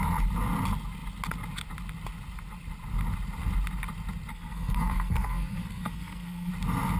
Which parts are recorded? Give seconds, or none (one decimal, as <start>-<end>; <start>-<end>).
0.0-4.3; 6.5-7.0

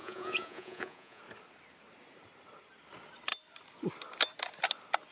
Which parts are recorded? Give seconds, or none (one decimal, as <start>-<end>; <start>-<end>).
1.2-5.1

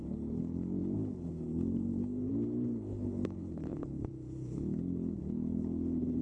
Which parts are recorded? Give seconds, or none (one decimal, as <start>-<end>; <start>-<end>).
none